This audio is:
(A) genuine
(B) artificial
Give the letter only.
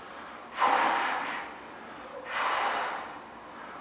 A